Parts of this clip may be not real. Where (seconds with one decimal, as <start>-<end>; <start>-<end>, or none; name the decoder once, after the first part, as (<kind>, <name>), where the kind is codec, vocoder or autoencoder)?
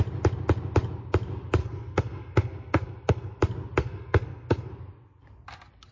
1.6-3.4 (codec, SNAC); 3.8-4.7